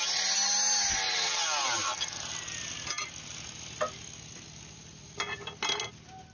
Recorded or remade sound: recorded